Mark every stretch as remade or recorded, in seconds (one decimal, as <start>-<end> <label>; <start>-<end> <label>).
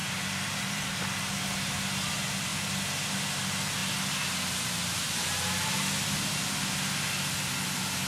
0.0-1.0 remade; 1.0-8.1 recorded